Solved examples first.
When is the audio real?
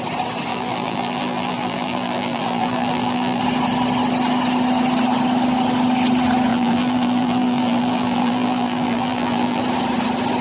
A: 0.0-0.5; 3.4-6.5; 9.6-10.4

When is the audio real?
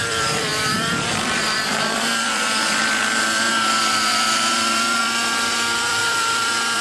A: none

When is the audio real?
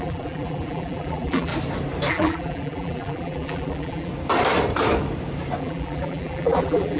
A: 1.5-2.1; 4.1-5.6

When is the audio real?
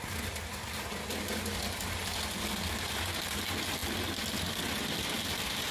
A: 0.0-5.7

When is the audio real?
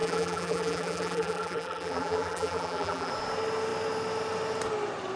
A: 3.1-5.2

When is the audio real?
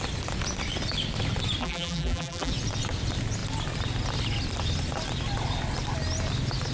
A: 0.0-1.6; 2.5-6.7